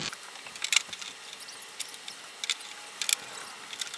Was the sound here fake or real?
real